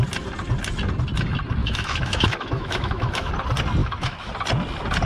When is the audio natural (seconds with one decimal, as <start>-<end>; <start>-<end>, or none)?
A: 0.0-1.6; 3.3-3.8; 4.3-5.1